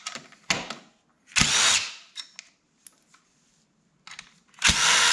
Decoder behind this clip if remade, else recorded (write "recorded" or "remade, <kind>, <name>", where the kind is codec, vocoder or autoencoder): recorded